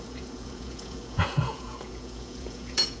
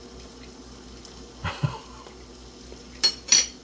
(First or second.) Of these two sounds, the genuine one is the second